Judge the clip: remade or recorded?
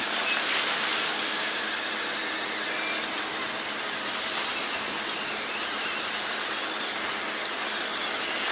recorded